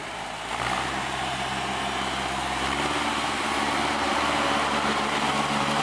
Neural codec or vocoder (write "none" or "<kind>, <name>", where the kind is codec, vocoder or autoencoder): vocoder, BigVGAN v2